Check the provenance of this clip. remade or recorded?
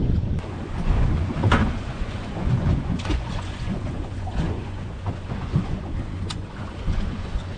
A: remade